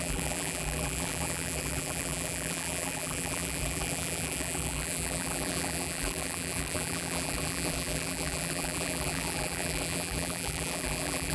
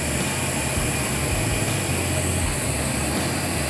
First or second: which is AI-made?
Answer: first